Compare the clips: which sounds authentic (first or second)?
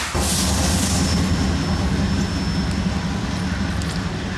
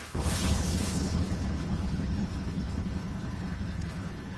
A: first